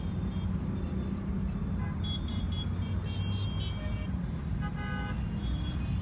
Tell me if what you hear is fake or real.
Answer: real